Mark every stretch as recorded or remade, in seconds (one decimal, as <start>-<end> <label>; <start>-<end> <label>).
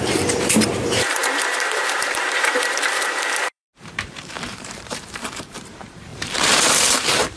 0.0-7.4 remade